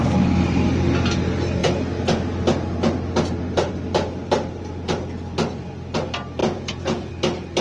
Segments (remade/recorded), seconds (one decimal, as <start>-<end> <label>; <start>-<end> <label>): 0.0-6.4 recorded; 6.4-7.1 remade; 7.1-7.6 recorded